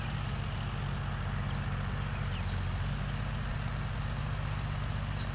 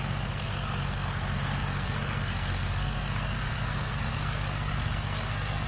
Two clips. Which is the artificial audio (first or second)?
second